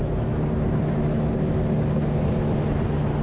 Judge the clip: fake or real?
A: real